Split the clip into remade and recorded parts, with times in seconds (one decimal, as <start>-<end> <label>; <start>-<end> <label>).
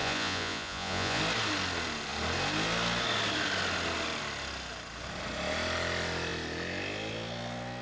0.0-1.2 remade; 1.2-7.8 recorded